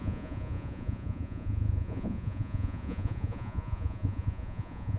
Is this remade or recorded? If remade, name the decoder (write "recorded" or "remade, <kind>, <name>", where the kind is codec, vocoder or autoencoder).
remade, vocoder, Vocos